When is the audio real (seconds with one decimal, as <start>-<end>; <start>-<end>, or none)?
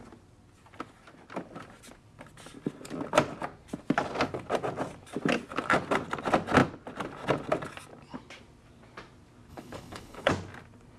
0.0-9.5; 10.3-11.0